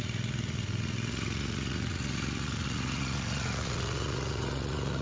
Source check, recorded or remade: remade